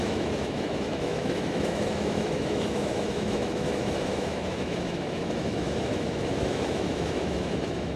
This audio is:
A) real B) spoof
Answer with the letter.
B